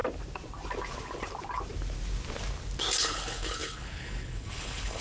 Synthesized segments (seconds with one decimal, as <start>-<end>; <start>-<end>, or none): 3.0-5.0